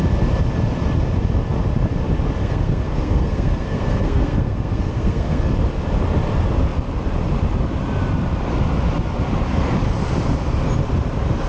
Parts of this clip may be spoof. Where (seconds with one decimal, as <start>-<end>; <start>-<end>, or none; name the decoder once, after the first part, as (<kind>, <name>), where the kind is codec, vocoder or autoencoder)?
2.4-5.4 (codec, SNAC)

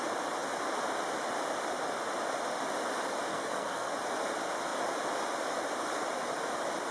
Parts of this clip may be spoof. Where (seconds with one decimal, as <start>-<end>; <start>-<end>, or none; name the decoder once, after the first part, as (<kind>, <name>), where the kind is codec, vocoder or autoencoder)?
3.3-3.9 (codec, SNAC)

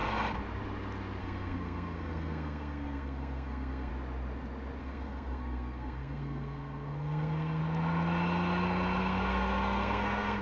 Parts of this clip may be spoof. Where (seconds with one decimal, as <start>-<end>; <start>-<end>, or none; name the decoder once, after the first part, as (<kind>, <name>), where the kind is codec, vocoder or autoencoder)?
1.2-3.9 (codec, SNAC); 4.8-7.6; 9.0-10.4

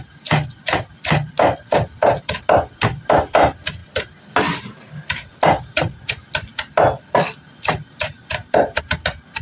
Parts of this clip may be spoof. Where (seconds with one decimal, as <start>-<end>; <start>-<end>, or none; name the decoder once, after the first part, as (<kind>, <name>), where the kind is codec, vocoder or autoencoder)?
none

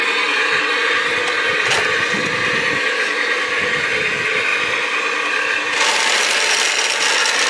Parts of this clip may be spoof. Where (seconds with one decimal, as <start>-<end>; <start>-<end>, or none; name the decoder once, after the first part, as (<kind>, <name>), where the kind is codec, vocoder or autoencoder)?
none